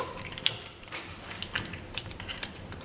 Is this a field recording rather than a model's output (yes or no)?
no